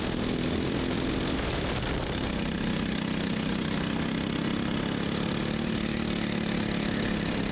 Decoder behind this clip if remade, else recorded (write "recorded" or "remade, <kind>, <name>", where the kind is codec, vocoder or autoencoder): recorded